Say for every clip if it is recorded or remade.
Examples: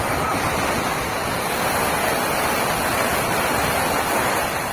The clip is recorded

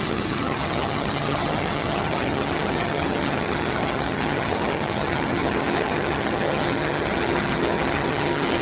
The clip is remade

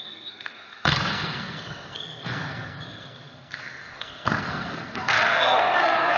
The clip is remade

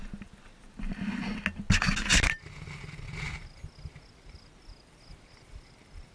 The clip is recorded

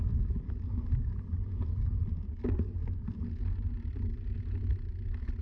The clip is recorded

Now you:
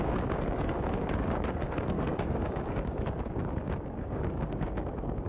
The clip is remade